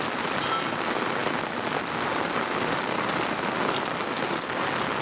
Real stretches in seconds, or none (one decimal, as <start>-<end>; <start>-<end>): 0.0-5.0